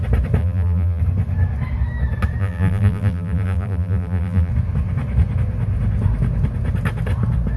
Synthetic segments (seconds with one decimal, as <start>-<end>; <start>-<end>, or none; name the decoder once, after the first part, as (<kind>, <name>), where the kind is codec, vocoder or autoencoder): 0.4-1.0 (vocoder, BigVGAN v2); 2.4-4.5